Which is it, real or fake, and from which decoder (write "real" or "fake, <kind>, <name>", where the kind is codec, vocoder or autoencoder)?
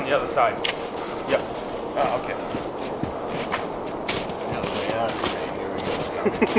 real